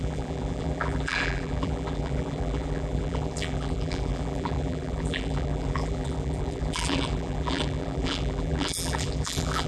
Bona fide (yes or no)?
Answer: no